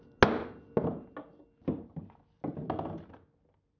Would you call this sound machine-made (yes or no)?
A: no